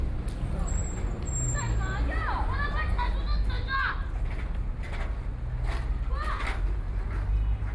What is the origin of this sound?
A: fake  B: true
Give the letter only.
B